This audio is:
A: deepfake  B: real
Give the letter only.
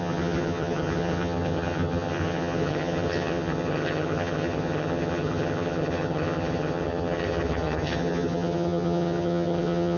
A